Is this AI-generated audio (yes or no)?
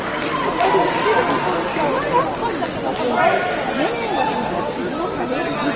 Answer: no